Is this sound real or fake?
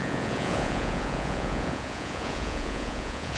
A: fake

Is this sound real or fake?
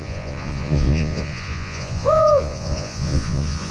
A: fake